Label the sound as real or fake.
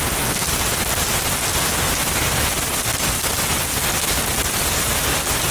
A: real